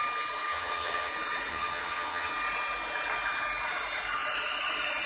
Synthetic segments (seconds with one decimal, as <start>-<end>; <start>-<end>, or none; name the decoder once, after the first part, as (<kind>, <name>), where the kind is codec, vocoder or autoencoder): 0.5-1.1 (vocoder, HiFi-GAN); 1.5-2.3

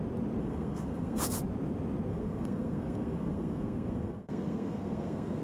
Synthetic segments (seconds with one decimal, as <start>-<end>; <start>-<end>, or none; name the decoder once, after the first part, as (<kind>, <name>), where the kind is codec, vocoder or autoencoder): 0.4-1.4 (codec, SNAC); 2.1-5.4

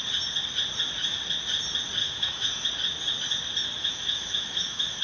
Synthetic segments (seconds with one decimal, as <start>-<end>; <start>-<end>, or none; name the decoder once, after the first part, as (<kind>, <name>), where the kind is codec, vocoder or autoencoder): 2.0-2.7 (autoencoder, DAC-VAE); 3.8-5.0

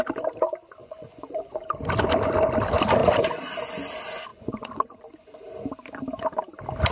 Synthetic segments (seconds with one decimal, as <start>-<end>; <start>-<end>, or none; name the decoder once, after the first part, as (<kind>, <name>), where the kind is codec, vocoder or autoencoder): 0.8-1.6 (vocoder, Vocos); 4.3-5.4